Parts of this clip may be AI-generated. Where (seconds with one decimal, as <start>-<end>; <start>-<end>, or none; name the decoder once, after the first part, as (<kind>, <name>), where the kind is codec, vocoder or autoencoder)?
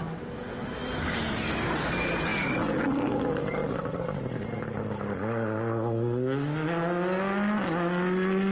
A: none